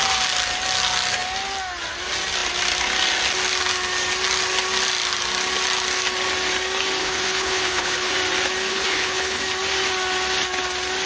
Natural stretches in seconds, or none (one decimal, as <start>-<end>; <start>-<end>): 0.0-7.0; 8.1-8.7; 9.4-11.1